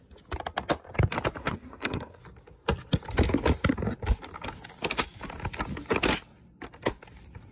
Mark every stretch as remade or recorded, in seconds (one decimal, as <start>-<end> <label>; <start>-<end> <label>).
0.0-1.4 recorded; 1.4-2.2 remade; 2.2-7.5 recorded